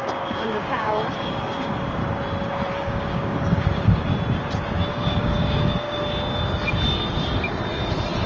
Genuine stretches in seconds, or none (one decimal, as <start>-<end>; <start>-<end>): 2.0-2.7; 4.1-4.9; 6.0-8.3